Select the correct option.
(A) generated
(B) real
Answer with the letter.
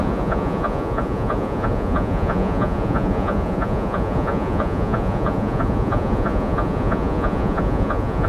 A